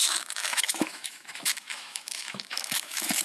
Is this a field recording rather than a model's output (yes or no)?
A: no